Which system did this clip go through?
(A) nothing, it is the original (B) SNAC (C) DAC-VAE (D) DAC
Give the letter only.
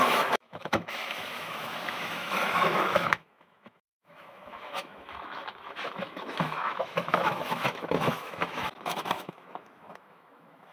C